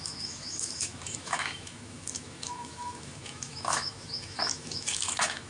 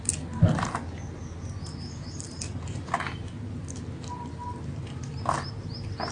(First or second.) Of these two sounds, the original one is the second